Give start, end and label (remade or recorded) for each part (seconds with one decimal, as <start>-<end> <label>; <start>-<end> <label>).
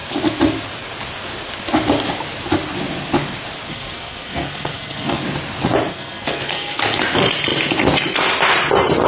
0.0-3.7 recorded; 3.7-5.2 remade; 5.2-5.9 recorded; 5.9-6.8 remade; 6.8-9.1 recorded